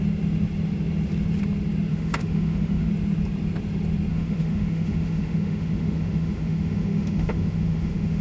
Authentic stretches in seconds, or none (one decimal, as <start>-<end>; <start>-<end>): 0.0-1.9; 2.9-4.1